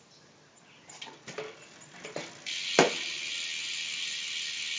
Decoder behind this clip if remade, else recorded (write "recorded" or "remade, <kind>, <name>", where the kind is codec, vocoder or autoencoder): recorded